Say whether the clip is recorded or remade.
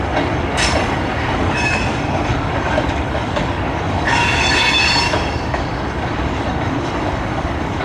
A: remade